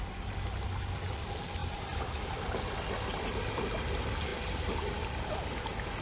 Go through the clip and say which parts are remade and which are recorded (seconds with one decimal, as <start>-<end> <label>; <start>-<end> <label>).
0.0-6.0 recorded